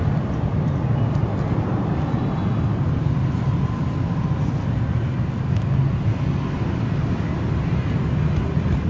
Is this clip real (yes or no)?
yes